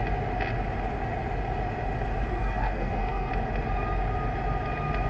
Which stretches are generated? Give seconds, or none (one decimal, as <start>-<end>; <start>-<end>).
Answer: 2.3-3.3